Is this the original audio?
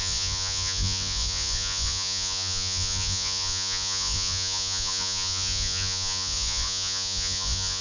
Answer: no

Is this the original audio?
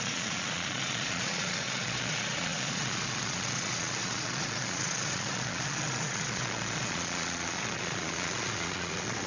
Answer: no